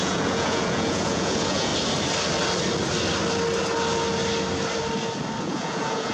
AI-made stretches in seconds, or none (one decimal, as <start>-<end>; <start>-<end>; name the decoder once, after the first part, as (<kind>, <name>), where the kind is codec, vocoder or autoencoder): 0.0-1.7 (vocoder, Vocos); 5.4-6.1